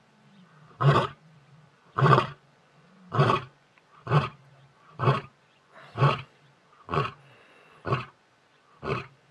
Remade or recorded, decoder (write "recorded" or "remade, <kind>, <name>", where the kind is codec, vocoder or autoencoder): remade, vocoder, Vocos